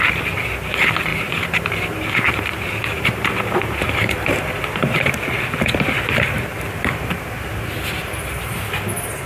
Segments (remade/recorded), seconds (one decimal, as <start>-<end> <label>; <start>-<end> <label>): 0.0-1.1 recorded; 1.1-5.1 remade; 5.1-6.5 recorded; 6.5-7.7 remade; 7.7-9.3 recorded